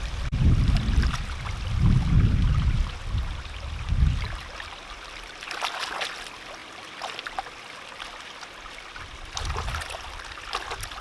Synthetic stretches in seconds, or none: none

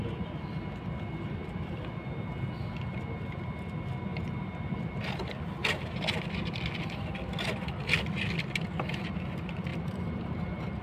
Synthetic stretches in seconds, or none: 1.4-2.0 (vocoder, BigVGAN v2); 4.1-7.0; 9.7-10.8

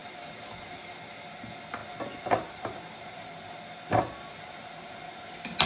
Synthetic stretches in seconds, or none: none